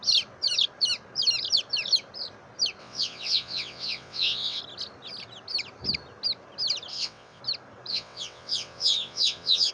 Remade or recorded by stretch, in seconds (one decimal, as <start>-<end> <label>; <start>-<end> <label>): 0.0-2.8 recorded; 2.8-4.6 remade; 4.6-6.9 recorded; 6.9-7.4 remade; 7.4-7.9 recorded; 7.9-9.7 remade